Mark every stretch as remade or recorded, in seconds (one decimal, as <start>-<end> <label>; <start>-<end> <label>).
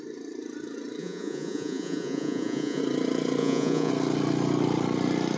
0.0-1.0 recorded; 1.0-2.8 remade; 2.8-3.4 recorded; 3.4-3.9 remade; 3.9-5.4 recorded